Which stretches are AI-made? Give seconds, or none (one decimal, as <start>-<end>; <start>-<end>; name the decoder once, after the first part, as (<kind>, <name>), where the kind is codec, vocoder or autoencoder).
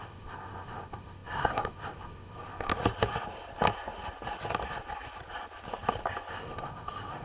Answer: 0.0-2.7 (codec, SNAC); 6.3-7.2